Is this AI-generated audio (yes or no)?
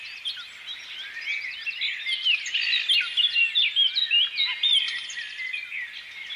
no